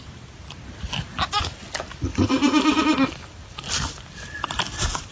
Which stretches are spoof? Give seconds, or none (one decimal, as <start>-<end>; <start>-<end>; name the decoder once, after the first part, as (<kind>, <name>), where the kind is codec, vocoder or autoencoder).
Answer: 2.1-2.8 (vocoder, BigVGAN v2)

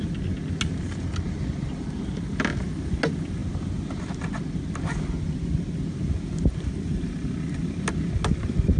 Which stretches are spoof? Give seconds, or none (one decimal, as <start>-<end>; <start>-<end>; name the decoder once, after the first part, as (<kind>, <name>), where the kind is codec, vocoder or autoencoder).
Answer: none